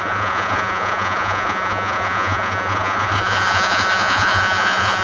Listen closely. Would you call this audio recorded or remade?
remade